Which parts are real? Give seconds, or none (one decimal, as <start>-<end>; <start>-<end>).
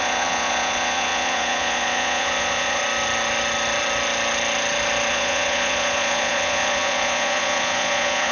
2.8-5.1